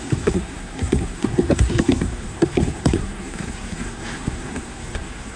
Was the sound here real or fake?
fake